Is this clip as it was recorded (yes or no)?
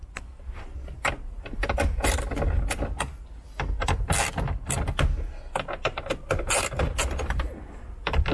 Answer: yes